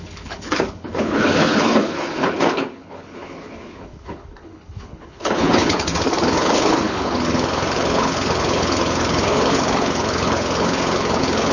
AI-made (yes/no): yes